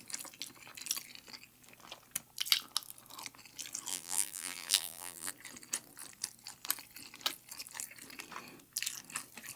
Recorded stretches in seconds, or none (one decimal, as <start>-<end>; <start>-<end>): 0.0-3.9; 5.3-9.6